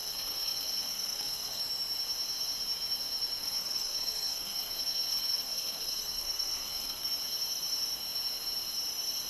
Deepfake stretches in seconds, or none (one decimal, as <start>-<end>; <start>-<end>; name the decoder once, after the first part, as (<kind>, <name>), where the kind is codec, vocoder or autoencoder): 0.0-1.6 (codec, SNAC); 3.4-7.1